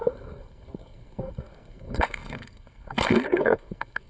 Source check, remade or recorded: remade